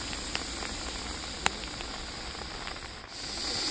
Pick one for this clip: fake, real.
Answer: real